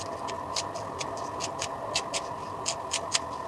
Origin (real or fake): real